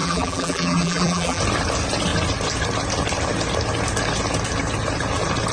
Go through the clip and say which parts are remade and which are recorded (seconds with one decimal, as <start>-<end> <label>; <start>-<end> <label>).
0.0-1.4 remade; 1.4-5.5 recorded